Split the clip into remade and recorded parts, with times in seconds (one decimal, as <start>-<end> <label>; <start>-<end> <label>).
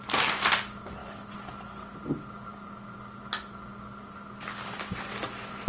0.0-5.7 recorded